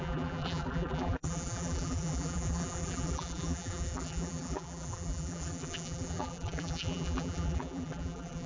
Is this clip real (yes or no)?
no